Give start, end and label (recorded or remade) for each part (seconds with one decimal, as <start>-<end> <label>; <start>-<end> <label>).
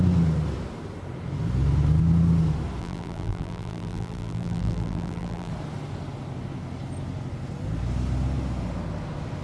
0.0-2.8 recorded; 2.8-5.5 remade; 5.5-9.4 recorded